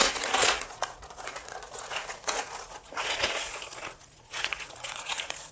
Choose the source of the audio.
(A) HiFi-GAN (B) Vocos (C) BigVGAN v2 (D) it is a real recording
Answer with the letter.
B